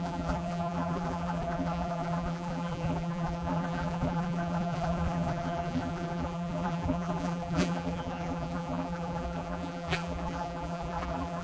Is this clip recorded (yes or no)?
no